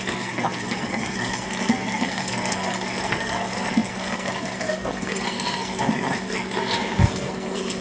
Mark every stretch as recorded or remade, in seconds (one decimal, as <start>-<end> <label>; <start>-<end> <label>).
0.0-7.8 remade